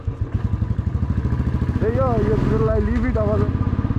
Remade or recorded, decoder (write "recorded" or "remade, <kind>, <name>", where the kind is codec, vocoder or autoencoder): recorded